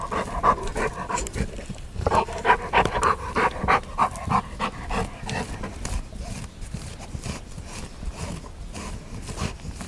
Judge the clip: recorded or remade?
recorded